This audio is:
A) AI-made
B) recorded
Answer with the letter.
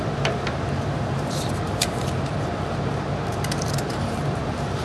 A